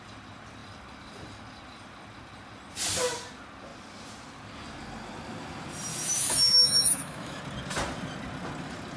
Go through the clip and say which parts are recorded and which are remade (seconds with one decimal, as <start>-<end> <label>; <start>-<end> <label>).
0.0-5.9 recorded; 5.9-7.4 remade; 7.4-9.0 recorded

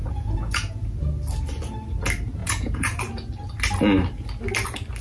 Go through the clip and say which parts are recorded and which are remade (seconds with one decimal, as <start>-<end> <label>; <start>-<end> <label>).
0.0-1.1 remade; 1.1-2.4 recorded; 2.4-3.0 remade; 3.0-5.0 recorded